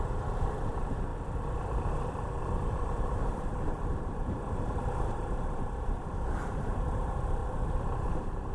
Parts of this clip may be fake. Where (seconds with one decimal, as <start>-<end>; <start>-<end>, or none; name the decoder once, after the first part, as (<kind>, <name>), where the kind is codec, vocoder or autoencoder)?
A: 0.0-1.1 (vocoder, BigVGAN v2); 1.9-7.4; 8.0-8.5